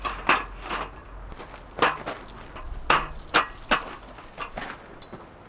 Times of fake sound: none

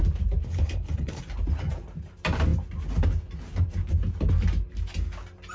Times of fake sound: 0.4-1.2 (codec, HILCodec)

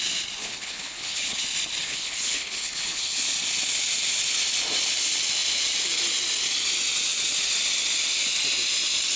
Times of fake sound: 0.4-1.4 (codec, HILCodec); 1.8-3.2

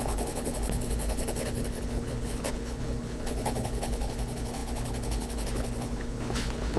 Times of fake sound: 0.0-6.8 (codec, HILCodec)